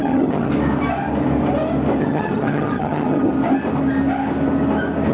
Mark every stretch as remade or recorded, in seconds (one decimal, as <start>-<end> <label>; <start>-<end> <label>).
0.0-0.5 remade; 0.5-2.0 recorded; 2.0-3.3 remade; 3.3-5.1 recorded